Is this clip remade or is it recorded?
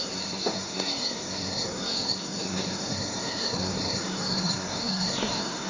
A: remade